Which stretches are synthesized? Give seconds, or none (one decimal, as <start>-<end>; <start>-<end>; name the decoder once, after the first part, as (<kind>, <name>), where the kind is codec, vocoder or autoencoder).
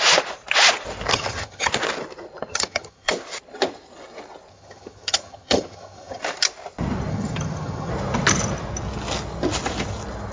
1.1-1.7 (vocoder, HiFi-GAN); 2.5-3.1; 4.5-6.2; 7.1-7.9